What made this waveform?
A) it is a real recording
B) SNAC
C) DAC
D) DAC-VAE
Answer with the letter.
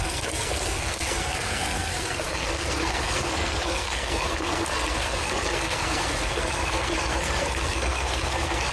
B